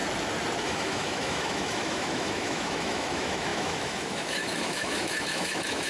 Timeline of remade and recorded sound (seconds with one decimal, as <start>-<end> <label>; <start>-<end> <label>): 0.0-0.6 recorded; 0.6-5.9 remade